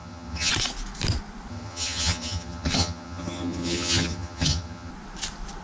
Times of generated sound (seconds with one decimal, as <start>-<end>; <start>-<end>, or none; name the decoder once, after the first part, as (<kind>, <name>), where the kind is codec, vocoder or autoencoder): 0.0-0.5 (vocoder, HiFi-GAN); 1.5-4.9